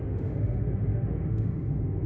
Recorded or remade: remade